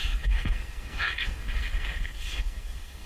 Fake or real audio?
fake